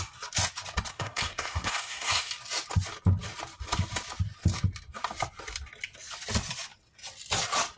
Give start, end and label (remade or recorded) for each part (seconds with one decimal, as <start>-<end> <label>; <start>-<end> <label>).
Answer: 0.0-0.9 recorded; 0.9-2.3 remade; 2.3-7.8 recorded